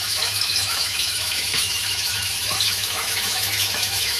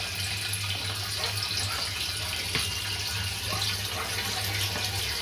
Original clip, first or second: second